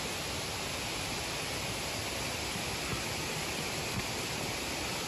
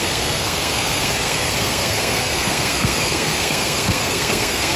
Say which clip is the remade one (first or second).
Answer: second